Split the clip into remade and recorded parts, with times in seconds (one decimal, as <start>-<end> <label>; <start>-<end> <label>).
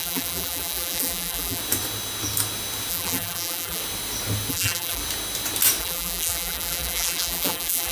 0.0-1.6 remade; 1.6-2.9 recorded; 2.9-3.8 remade; 3.8-4.5 recorded; 4.5-5.0 remade; 5.0-5.8 recorded; 5.8-7.9 remade